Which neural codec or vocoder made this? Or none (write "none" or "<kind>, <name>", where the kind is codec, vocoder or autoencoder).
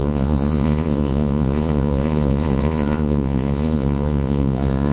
vocoder, Vocos